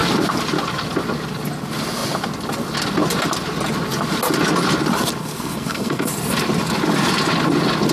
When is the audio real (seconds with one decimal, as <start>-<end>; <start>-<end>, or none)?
0.0-5.2; 6.1-7.9